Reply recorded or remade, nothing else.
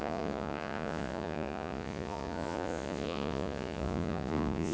remade